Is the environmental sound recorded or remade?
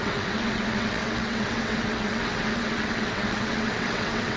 remade